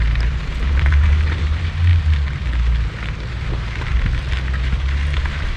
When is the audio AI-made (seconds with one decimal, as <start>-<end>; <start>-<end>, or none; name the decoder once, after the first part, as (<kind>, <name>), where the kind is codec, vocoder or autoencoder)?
0.0-1.9 (vocoder, BigVGAN v2); 3.3-3.9; 4.6-5.6